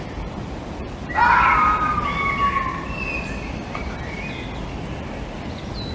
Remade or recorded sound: recorded